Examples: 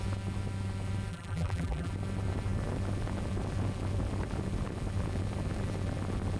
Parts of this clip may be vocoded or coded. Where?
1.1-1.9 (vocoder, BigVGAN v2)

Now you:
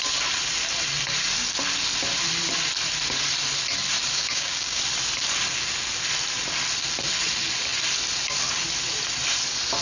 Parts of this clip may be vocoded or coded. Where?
4.1-4.8 (codec, DAC)

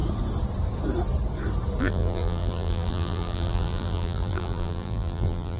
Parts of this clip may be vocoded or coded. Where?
1.8-5.6 (vocoder, BigVGAN v2)

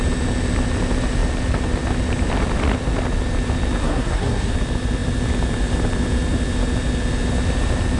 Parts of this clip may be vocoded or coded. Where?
3.8-4.5 (codec, SNAC)